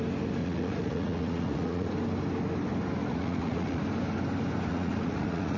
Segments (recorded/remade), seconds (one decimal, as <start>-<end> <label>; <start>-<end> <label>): 0.0-0.4 recorded; 0.4-1.9 remade; 1.9-3.0 recorded; 3.0-3.8 remade; 3.8-4.7 recorded; 4.7-5.6 remade